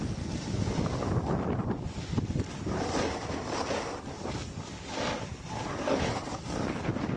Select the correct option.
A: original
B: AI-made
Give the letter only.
A